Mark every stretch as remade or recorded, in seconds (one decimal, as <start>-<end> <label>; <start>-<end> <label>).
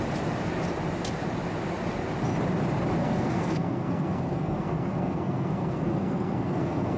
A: 0.0-3.0 recorded; 3.0-7.0 remade